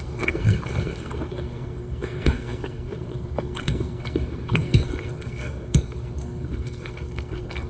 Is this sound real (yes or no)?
no